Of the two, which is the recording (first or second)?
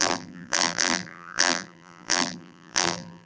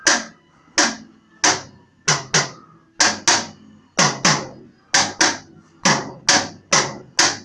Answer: second